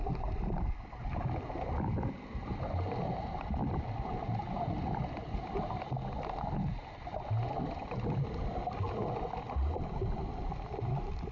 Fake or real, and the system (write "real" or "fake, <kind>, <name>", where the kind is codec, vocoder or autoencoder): real